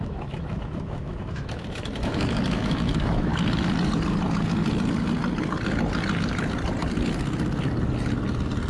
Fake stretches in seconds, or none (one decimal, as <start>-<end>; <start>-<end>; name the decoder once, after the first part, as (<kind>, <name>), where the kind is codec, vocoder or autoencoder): 0.0-3.3 (autoencoder, DAC-VAE)